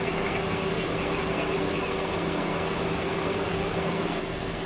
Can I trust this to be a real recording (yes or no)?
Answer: no